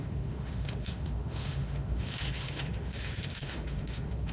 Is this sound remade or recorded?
remade